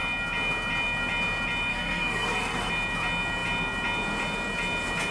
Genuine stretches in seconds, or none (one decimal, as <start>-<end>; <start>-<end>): 0.0-1.7; 2.7-5.1